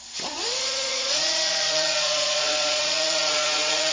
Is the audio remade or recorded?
remade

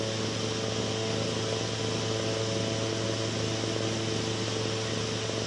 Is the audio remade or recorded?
recorded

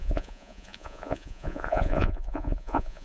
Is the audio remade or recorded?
remade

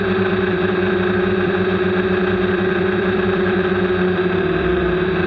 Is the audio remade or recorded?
remade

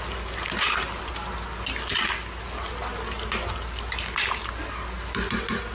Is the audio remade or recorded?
recorded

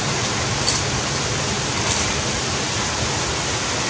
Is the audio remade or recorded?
recorded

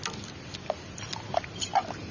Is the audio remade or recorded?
recorded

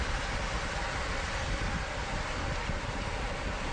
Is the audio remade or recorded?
remade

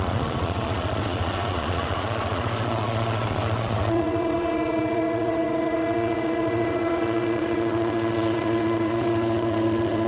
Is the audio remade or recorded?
remade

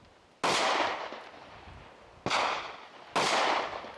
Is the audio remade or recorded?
recorded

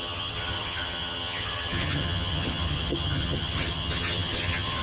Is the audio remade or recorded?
remade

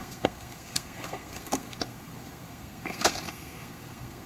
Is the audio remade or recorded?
remade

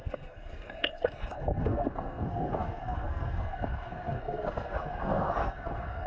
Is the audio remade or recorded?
remade